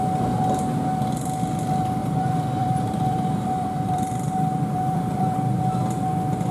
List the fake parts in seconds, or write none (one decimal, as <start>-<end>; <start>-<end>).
2.0-5.6